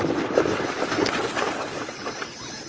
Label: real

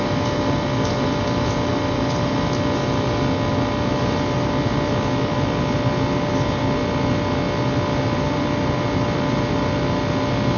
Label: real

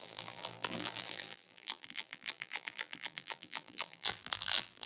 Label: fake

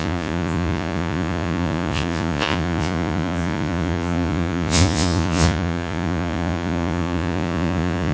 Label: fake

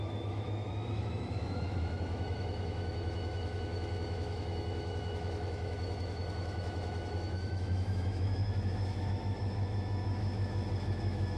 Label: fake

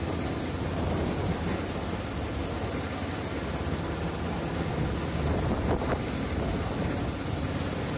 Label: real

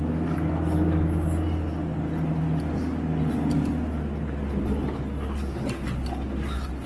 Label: real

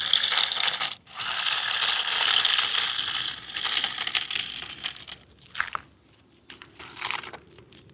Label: real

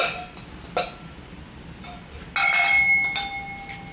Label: real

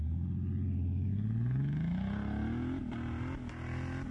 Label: real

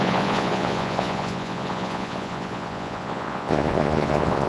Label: fake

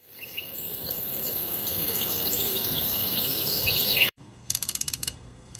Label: fake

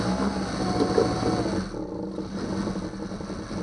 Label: real